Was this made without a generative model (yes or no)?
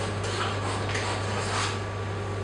yes